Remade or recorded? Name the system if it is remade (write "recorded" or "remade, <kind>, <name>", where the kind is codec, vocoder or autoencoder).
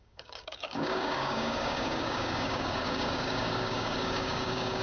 remade, codec, DAC